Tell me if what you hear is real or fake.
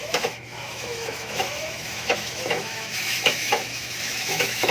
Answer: fake